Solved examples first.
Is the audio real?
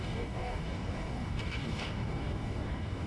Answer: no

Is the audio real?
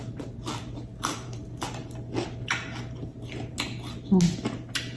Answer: yes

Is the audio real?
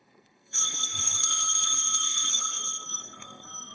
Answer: no